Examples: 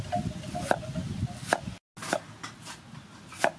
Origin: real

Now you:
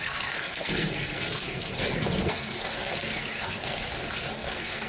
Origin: fake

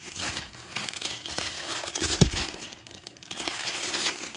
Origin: fake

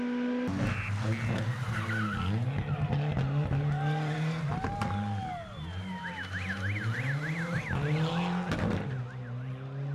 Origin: real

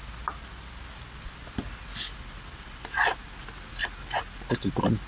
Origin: real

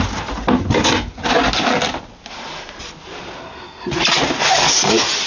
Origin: real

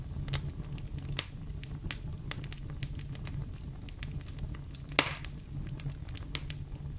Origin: real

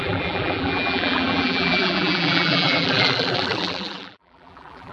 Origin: fake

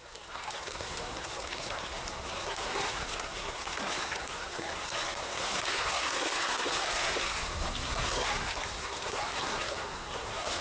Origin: fake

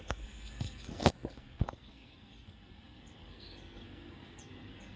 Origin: fake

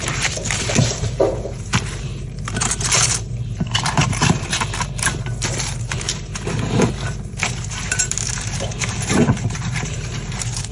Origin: fake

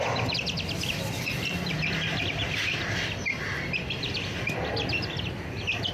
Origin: fake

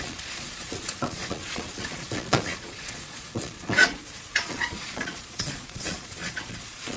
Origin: fake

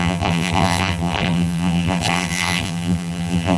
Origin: fake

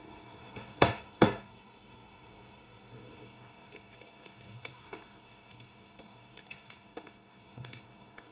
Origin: fake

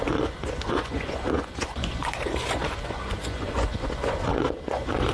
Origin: fake